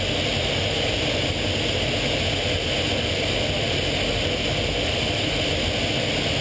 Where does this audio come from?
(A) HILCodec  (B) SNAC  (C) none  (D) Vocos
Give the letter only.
C